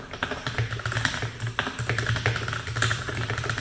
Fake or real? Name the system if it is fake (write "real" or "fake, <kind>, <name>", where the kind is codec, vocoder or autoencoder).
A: real